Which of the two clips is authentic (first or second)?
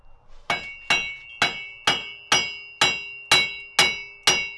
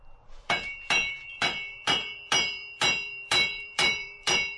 first